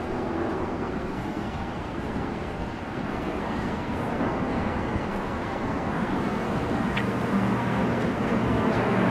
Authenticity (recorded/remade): remade